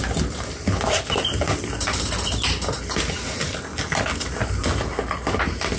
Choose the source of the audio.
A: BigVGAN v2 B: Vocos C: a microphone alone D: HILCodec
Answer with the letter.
C